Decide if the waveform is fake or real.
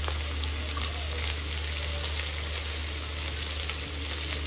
real